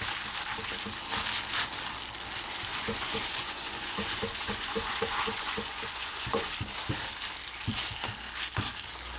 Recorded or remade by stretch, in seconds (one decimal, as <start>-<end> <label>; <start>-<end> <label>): 0.0-2.7 recorded; 2.7-6.5 remade; 6.5-9.2 recorded